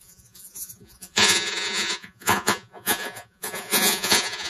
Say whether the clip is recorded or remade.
remade